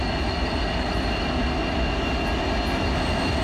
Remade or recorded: recorded